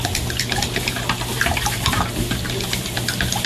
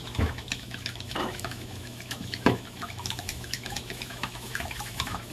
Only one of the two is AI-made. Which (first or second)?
second